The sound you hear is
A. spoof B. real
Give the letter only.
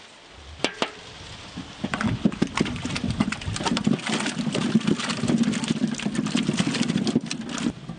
B